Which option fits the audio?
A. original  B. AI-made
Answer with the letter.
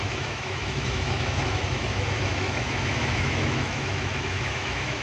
B